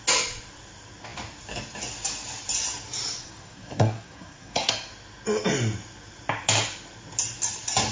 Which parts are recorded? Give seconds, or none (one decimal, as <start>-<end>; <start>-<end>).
0.0-3.2; 4.7-7.9